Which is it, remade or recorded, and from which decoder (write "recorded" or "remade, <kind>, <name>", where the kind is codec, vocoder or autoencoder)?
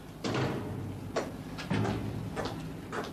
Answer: recorded